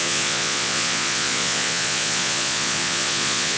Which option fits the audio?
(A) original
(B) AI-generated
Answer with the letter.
B